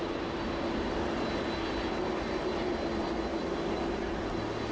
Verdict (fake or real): real